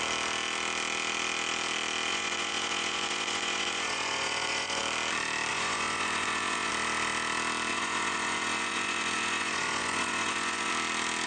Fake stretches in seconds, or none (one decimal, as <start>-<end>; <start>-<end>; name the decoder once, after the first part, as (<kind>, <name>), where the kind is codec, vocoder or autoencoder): 2.1-4.8 (vocoder, Vocos); 5.5-6.7; 7.7-10.7